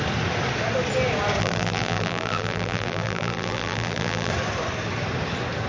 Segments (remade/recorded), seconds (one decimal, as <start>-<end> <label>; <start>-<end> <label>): 0.0-1.4 recorded; 1.4-4.3 remade; 4.3-5.7 recorded